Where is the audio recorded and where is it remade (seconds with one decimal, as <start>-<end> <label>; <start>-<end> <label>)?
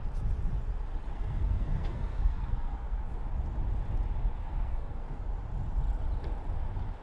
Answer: 0.0-1.1 recorded; 1.1-3.2 remade; 3.2-4.4 recorded; 4.4-5.2 remade; 5.2-7.0 recorded